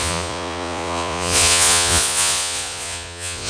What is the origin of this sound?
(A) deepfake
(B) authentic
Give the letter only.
A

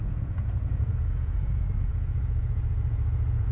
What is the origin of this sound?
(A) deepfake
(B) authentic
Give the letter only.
A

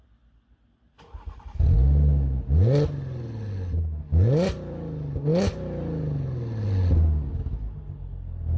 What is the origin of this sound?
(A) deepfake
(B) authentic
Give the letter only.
B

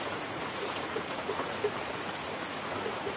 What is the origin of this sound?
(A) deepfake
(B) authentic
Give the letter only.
A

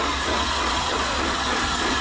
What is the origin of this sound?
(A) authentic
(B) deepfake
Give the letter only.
B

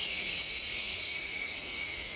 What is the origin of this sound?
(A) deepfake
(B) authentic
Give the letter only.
A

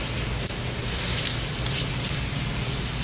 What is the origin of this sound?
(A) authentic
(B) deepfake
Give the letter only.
A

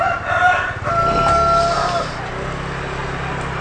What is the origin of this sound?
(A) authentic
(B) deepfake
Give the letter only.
A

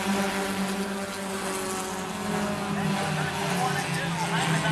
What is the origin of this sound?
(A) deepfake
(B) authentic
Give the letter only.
B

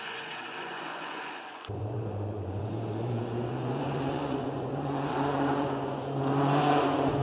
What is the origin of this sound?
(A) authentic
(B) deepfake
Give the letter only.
B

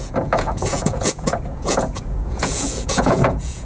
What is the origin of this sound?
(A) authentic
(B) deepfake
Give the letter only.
B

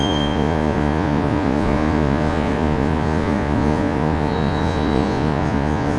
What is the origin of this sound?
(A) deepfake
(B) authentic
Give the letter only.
A